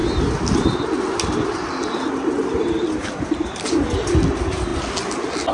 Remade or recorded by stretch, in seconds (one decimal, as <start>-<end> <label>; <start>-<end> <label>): 0.0-5.5 recorded